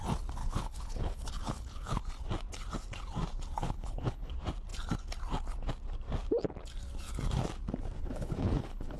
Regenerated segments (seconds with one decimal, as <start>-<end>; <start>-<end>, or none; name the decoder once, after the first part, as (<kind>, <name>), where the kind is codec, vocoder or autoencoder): 0.4-2.0 (codec, HILCodec); 3.6-4.3; 8.0-9.0